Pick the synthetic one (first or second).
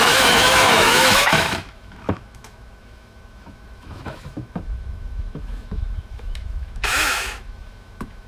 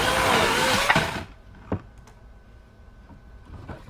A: first